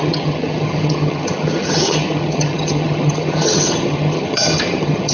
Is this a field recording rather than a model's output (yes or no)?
no